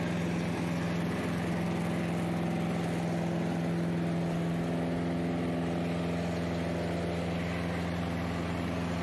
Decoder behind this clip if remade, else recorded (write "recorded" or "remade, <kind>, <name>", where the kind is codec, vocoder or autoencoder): recorded